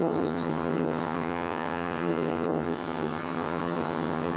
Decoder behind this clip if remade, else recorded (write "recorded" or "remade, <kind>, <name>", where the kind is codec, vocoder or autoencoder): remade, vocoder, HiFi-GAN